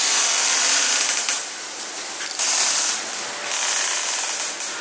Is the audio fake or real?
real